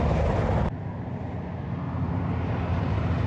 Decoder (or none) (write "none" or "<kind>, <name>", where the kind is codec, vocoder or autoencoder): none